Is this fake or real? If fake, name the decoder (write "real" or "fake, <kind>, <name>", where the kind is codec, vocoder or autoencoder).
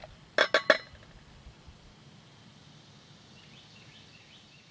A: real